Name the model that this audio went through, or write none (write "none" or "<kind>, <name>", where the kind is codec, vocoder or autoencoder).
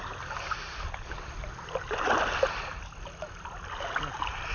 none